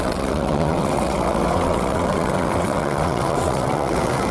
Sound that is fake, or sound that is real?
fake